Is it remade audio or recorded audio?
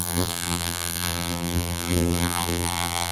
remade